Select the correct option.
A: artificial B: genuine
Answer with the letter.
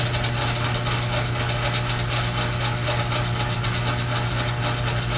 B